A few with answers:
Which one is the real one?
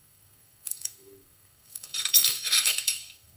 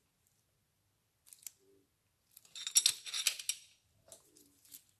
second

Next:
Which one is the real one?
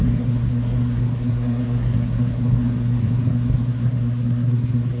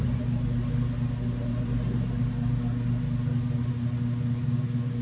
second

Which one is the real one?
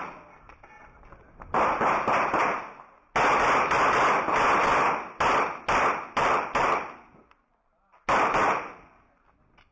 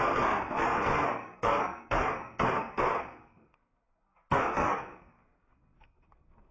first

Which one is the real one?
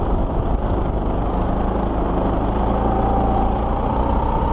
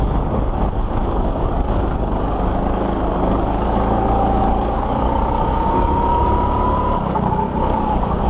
first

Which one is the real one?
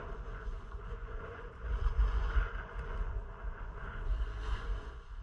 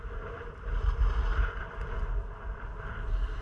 second